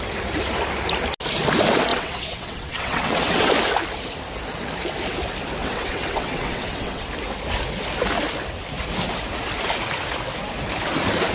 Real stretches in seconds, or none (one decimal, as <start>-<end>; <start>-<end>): 0.0-1.9; 3.5-5.6; 7.1-11.3